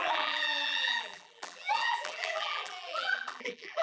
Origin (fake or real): fake